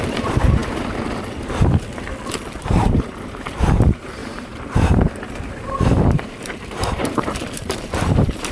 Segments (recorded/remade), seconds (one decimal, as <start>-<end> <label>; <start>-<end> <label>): 0.0-0.6 remade; 0.6-2.6 recorded; 2.6-8.5 remade